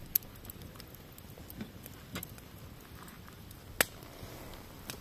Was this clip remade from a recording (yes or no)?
no